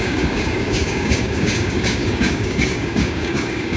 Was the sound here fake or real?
fake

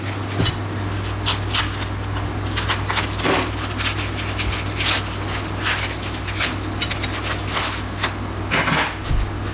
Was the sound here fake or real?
real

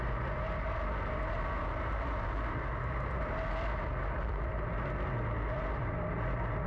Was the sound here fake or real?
real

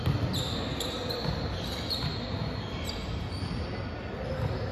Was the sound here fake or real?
real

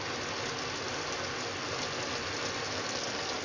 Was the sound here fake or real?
real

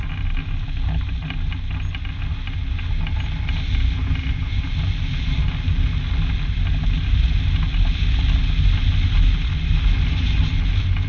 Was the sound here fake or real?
real